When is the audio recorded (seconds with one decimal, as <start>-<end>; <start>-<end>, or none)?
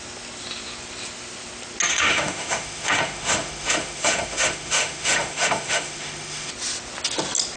0.0-1.9; 6.5-7.6